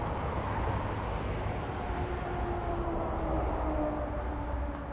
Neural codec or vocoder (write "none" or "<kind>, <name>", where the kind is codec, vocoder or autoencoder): none